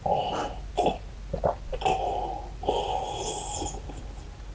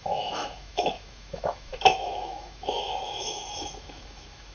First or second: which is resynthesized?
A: second